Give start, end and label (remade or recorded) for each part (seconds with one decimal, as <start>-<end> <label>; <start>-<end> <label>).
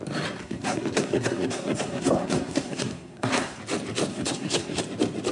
0.0-0.4 recorded; 0.4-3.6 remade; 3.6-4.1 recorded; 4.1-4.8 remade; 4.8-5.3 recorded